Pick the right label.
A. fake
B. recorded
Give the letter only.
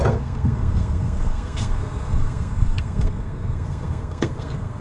A